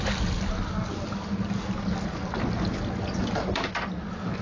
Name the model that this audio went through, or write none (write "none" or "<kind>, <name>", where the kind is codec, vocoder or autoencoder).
none